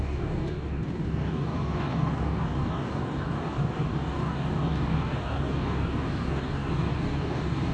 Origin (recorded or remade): remade